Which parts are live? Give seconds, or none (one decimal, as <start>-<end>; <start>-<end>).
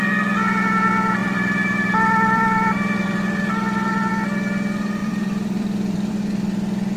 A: 0.0-1.2; 4.1-5.0; 6.1-7.0